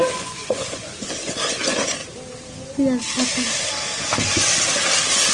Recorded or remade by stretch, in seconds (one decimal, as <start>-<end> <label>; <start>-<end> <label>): 0.0-2.0 remade; 2.0-5.3 recorded